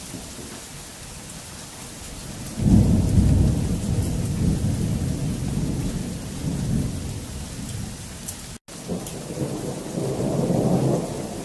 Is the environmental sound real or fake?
real